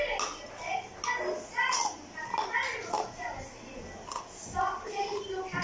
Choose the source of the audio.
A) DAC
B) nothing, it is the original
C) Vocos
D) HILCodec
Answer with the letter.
B